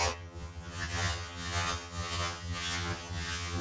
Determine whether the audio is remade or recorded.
remade